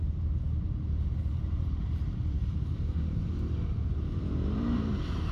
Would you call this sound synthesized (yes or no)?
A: yes